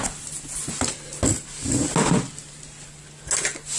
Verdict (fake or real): real